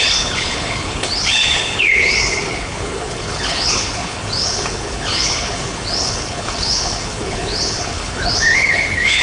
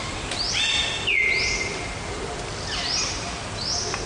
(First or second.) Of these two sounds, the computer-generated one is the first